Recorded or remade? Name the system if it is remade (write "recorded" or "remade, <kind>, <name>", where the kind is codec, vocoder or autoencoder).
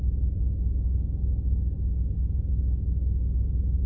recorded